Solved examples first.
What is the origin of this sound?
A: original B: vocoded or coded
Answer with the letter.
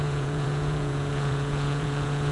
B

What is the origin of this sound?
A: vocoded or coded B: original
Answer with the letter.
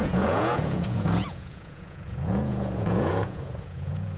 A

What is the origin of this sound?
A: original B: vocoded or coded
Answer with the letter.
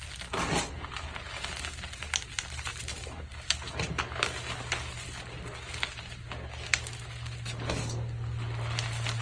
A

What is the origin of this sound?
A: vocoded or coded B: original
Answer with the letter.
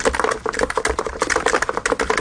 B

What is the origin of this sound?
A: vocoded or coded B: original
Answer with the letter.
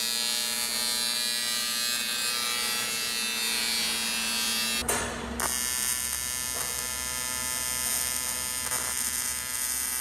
B